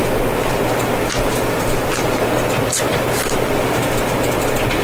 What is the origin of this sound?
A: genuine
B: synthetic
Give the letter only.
B